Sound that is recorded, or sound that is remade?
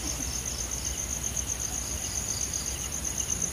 recorded